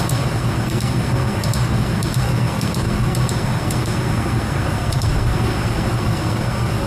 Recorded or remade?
remade